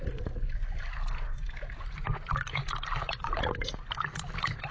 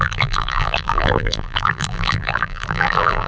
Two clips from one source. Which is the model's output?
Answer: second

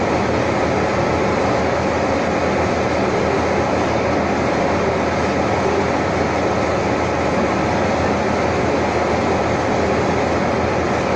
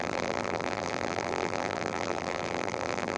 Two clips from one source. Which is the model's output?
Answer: second